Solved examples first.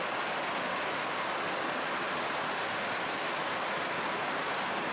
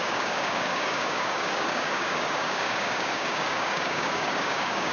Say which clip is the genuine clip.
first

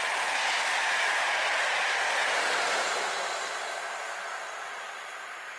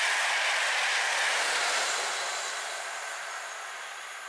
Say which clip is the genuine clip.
second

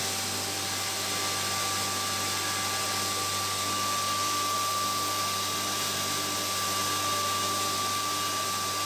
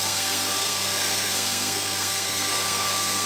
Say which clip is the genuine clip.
first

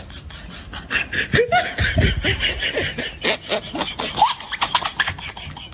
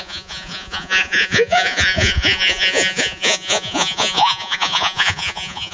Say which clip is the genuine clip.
first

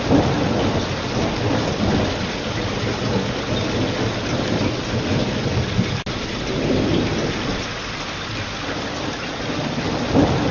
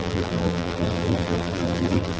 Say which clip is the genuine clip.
first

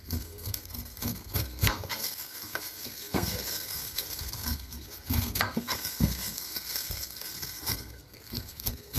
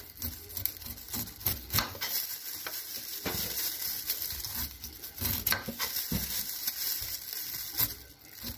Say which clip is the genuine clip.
second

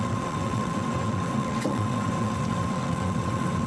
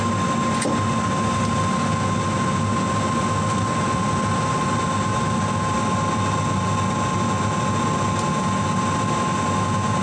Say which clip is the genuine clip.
second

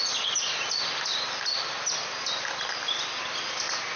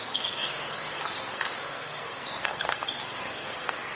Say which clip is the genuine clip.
first